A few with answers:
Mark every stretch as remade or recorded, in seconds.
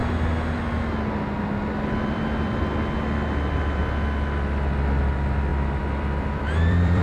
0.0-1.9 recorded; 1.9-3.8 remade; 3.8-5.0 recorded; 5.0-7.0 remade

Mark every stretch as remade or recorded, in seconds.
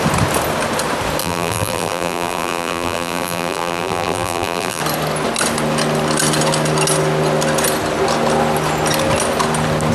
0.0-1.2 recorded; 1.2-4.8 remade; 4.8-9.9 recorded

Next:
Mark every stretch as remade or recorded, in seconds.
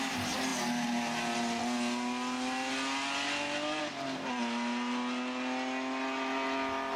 0.0-7.0 recorded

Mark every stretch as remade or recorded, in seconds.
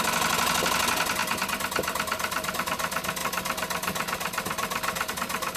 0.0-1.2 recorded; 1.2-2.5 remade; 2.5-5.6 recorded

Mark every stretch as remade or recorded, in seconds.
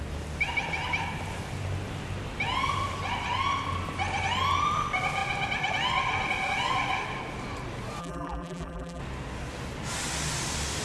0.0-8.0 recorded; 8.0-9.0 remade; 9.0-10.8 recorded